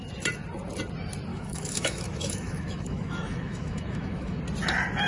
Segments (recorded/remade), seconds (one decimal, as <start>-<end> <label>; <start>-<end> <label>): 0.0-1.3 recorded; 1.3-4.4 remade; 4.4-5.1 recorded